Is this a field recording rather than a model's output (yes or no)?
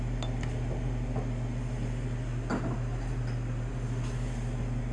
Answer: yes